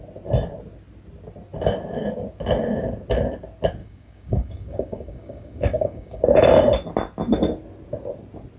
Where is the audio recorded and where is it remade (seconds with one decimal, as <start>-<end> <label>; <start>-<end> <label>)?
0.0-3.8 recorded; 3.8-6.2 remade; 6.2-8.6 recorded